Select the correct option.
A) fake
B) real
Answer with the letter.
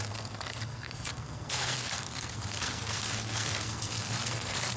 A